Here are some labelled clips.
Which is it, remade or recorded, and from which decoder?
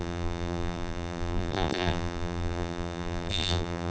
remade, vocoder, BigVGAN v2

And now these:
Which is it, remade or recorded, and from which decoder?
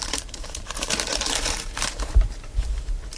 remade, vocoder, BigVGAN v2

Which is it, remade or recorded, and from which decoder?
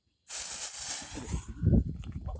recorded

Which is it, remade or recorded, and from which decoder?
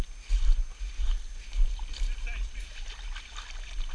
recorded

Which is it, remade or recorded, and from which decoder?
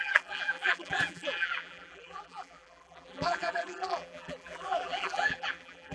remade, vocoder, BigVGAN v2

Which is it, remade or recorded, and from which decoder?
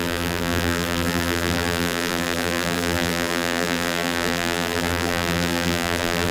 remade, vocoder, BigVGAN v2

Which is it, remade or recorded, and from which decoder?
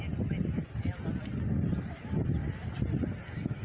recorded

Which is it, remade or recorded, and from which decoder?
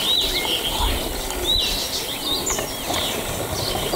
recorded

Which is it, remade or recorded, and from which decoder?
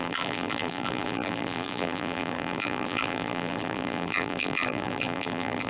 remade, vocoder, BigVGAN v2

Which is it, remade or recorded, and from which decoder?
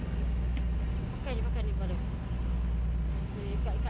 recorded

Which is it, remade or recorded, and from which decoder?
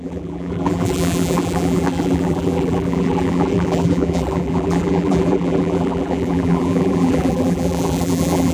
remade, vocoder, BigVGAN v2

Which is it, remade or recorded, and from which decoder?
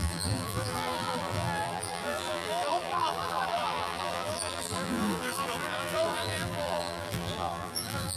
remade, vocoder, BigVGAN v2